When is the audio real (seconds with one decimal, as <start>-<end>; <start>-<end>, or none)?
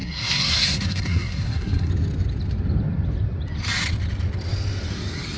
1.9-5.4